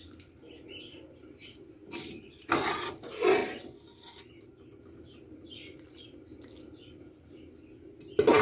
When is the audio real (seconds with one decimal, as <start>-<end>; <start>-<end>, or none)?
0.0-8.4